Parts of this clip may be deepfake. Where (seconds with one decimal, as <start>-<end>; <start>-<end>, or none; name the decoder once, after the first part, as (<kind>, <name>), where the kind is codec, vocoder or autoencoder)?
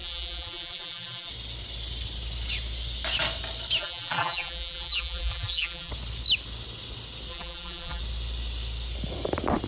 0.0-1.3 (vocoder, BigVGAN v2); 3.8-5.9; 7.3-8.0